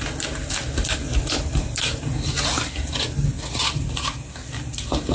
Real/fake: real